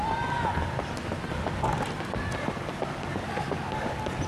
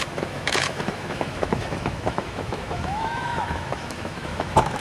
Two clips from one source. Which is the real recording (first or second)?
first